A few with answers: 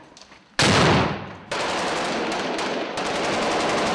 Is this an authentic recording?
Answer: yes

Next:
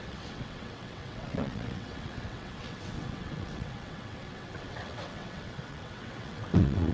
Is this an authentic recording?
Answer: no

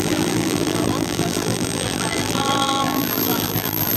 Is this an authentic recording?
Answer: no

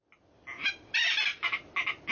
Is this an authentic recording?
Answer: yes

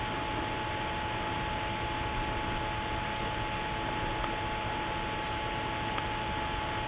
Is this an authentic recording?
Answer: yes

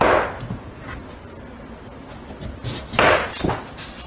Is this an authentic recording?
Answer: yes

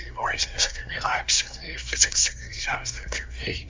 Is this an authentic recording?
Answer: no